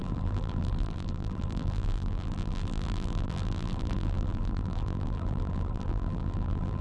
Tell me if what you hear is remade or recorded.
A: remade